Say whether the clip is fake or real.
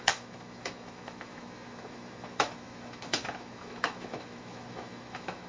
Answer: fake